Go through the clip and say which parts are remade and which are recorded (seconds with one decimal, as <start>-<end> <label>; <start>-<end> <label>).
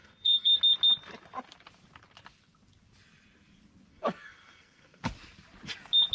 0.0-0.6 remade; 0.6-3.9 recorded; 3.9-5.0 remade; 5.0-6.1 recorded